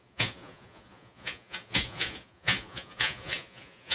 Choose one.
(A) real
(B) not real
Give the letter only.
B